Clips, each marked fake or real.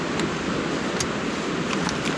real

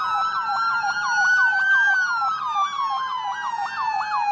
real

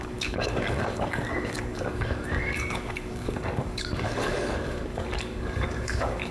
fake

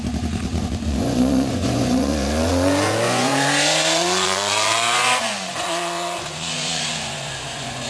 fake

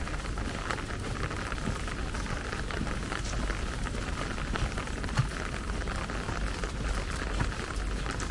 real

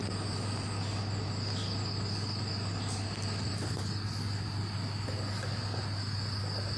real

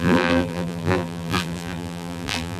fake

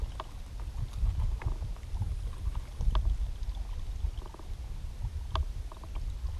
real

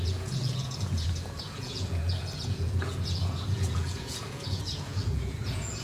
fake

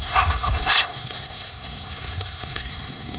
fake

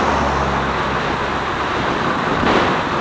real